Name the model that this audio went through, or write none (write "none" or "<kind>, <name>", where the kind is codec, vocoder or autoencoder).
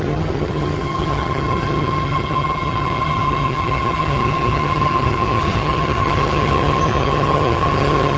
vocoder, HiFi-GAN